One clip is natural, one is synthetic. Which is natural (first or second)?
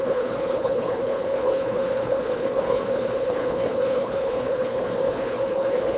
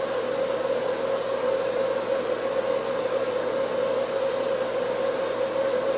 second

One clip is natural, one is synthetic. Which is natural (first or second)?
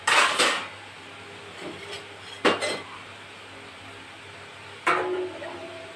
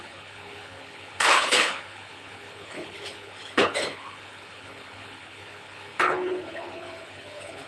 first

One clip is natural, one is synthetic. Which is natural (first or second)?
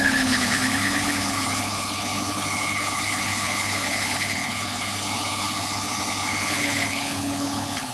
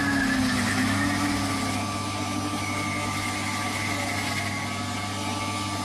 second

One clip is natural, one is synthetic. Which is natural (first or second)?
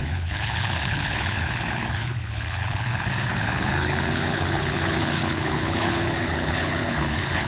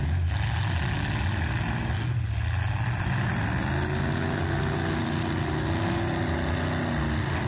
second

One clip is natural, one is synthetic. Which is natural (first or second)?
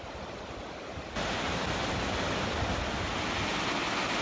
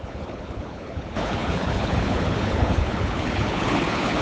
first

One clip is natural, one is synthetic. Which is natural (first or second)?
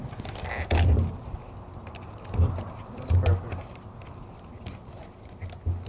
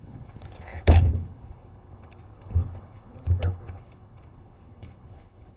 first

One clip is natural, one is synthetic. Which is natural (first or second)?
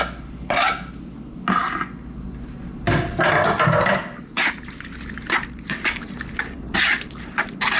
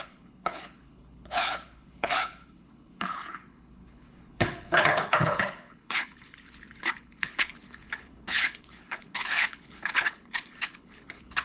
first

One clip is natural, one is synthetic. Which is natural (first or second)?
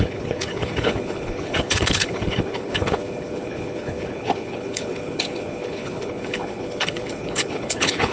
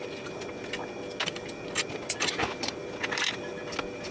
second